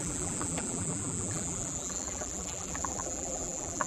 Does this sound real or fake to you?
fake